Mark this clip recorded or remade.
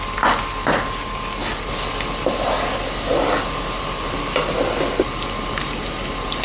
recorded